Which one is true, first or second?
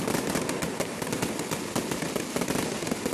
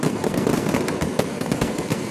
first